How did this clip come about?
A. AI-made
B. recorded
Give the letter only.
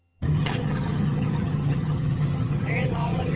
A